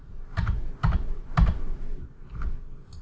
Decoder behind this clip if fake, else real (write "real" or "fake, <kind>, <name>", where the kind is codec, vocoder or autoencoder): real